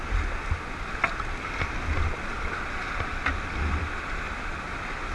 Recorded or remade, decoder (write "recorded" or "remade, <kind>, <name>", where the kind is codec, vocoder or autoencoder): recorded